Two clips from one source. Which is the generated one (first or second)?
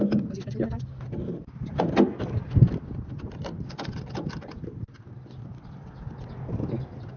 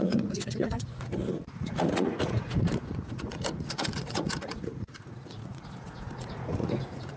second